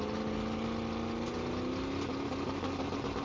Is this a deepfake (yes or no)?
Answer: no